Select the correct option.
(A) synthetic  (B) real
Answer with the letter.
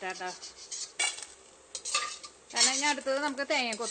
B